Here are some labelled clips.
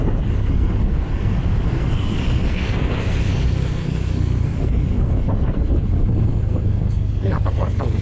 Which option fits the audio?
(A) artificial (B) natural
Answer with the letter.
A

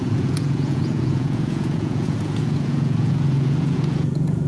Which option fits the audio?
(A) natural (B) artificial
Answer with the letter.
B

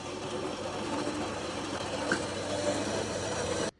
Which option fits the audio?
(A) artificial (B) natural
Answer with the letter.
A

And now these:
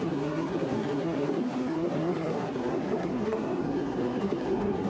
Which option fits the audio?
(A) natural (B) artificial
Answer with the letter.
B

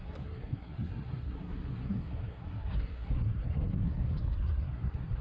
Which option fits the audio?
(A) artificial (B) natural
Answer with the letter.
A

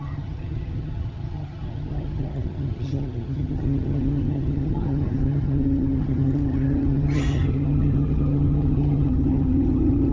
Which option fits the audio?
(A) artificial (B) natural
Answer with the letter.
A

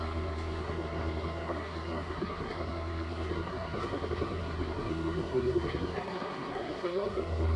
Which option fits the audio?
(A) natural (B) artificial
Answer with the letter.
B